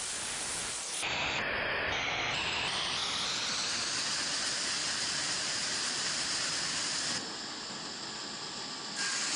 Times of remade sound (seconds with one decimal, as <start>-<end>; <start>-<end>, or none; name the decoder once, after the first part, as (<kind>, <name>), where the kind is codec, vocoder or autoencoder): 4.8-6.2 (vocoder, BigVGAN v2)

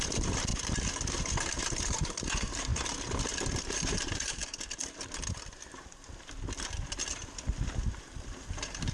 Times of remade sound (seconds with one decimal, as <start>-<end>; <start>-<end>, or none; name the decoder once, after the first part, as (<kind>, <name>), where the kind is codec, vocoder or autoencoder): 0.0-0.5 (vocoder, BigVGAN v2); 1.1-2.7; 3.6-4.4; 8.5-8.9